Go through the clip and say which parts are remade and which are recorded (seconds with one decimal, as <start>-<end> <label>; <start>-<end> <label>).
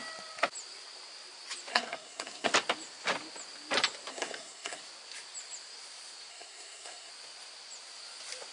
0.0-1.7 recorded; 1.7-2.5 remade; 2.5-4.1 recorded; 4.1-4.8 remade; 4.8-6.3 recorded; 6.3-7.1 remade; 7.1-8.5 recorded